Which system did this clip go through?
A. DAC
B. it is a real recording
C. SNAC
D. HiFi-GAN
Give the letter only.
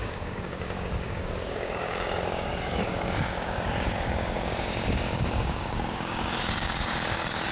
A